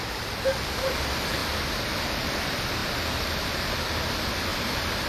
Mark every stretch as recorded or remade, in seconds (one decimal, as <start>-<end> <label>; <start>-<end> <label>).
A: 0.0-1.4 remade; 1.4-1.9 recorded; 1.9-2.8 remade; 2.8-3.5 recorded; 3.5-4.5 remade; 4.5-5.1 recorded